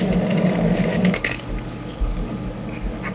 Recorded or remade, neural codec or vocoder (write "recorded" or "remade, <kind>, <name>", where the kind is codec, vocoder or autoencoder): remade, codec, DAC